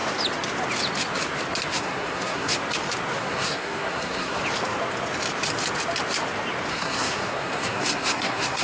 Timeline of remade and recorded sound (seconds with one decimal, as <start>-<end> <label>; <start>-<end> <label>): 0.0-1.7 recorded; 1.7-2.6 remade; 2.6-3.2 recorded; 3.2-4.4 remade; 4.4-6.7 recorded; 6.7-8.6 remade